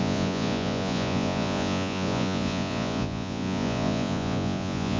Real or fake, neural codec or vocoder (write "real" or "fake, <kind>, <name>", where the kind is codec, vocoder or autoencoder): fake, vocoder, Vocos